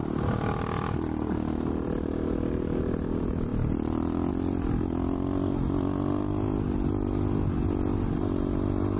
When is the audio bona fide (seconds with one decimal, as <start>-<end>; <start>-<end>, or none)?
0.0-9.0